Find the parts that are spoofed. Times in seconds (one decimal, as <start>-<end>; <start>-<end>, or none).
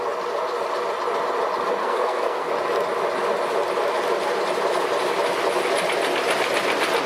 1.8-2.5